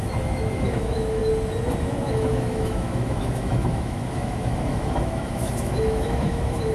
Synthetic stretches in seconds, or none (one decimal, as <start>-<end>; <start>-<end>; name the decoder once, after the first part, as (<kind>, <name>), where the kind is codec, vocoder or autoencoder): 0.0-1.2 (autoencoder, DAC-VAE); 1.8-6.7